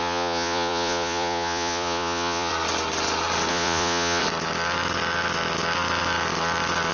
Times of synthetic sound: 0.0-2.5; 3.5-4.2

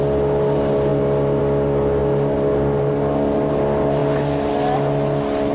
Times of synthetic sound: none

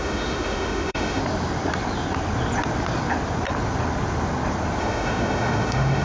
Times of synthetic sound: 0.0-1.2; 4.8-6.0